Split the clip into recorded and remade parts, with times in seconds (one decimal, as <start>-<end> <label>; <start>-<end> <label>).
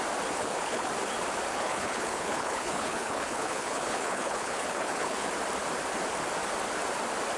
0.0-0.4 recorded; 0.4-0.9 remade; 0.9-1.5 recorded; 1.5-5.3 remade; 5.3-7.4 recorded